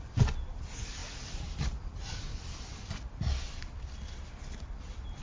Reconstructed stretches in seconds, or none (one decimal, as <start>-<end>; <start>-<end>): none